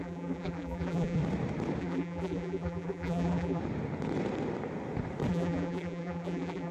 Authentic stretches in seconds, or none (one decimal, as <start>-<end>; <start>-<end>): 1.2-1.8; 3.6-5.3